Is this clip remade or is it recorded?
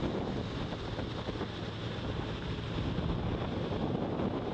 recorded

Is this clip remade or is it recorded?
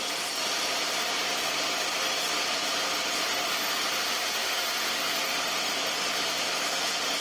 remade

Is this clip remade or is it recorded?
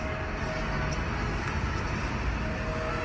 recorded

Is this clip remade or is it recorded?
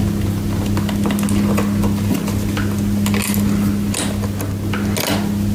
recorded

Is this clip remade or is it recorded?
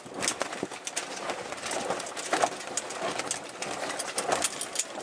recorded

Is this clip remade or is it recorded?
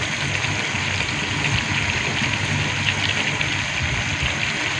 recorded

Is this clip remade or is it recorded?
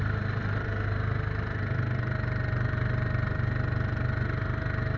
recorded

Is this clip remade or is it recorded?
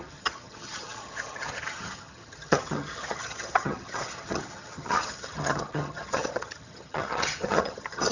remade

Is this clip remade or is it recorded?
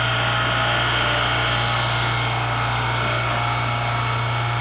recorded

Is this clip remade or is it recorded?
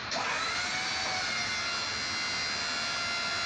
recorded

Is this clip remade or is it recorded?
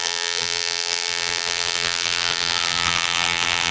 remade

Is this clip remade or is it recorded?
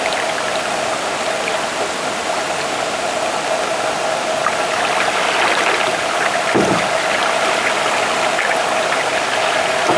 recorded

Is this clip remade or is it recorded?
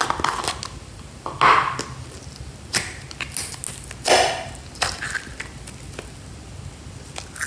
recorded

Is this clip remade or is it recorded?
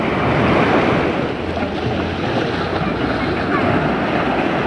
recorded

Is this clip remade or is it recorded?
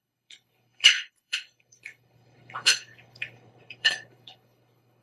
remade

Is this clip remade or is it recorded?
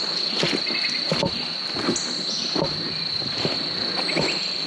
recorded